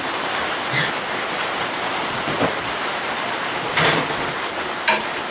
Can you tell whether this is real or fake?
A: fake